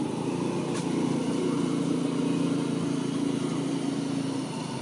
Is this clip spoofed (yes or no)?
no